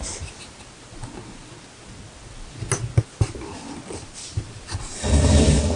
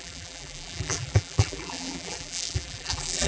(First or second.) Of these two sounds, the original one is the first